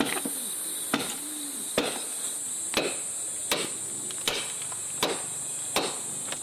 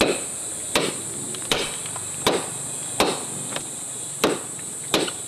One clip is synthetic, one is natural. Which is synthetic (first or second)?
second